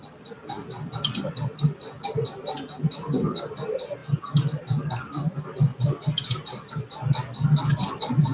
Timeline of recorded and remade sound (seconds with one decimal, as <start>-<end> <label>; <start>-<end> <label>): 0.0-4.0 recorded; 4.0-4.6 remade; 4.6-5.7 recorded; 5.7-7.2 remade; 7.2-8.3 recorded